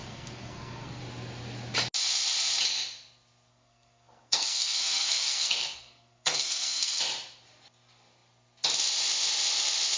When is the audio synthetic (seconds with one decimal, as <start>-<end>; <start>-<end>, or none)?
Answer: 0.0-1.0; 3.5-7.0